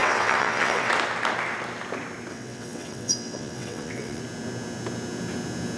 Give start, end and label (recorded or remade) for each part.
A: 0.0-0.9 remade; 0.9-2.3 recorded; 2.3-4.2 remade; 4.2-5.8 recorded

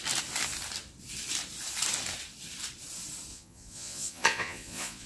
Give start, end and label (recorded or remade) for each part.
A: 0.0-3.3 recorded; 3.3-5.1 remade

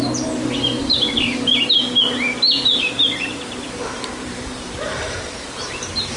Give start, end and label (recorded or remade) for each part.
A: 0.0-0.8 recorded; 0.8-1.5 remade; 1.5-2.7 recorded; 2.7-6.2 remade

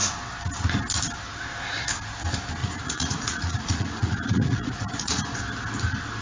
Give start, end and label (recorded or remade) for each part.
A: 0.0-2.6 recorded; 2.6-5.4 remade; 5.4-6.2 recorded

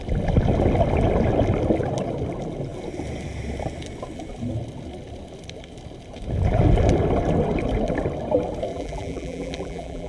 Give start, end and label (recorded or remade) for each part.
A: 0.0-8.7 recorded; 8.7-10.1 remade